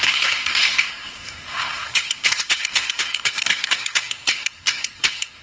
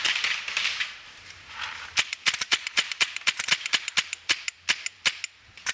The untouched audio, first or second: second